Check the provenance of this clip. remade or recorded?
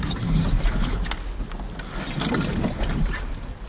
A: recorded